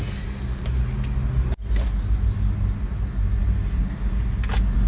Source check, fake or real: real